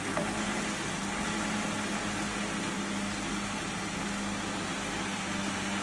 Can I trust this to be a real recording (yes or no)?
yes